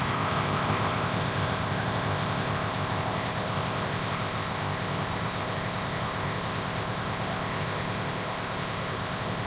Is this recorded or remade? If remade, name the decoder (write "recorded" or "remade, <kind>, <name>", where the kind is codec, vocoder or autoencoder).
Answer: remade, codec, ZipCodec